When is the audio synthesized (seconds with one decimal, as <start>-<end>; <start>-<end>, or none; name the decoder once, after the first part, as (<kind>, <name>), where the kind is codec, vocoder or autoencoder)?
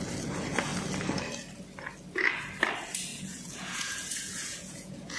3.1-5.2 (vocoder, Vocos)